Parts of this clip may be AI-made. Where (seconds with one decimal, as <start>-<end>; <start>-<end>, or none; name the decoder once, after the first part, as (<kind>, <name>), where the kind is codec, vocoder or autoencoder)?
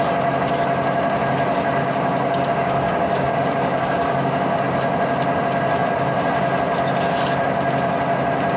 1.8-4.6 (codec, DAC)